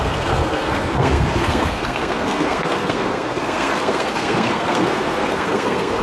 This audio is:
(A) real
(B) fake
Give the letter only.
B